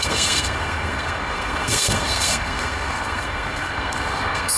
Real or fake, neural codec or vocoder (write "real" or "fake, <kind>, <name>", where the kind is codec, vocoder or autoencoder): fake, codec, SNAC